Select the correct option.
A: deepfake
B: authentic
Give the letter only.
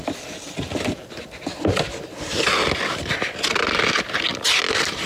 B